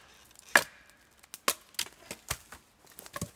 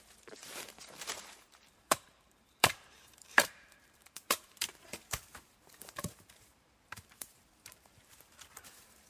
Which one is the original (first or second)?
first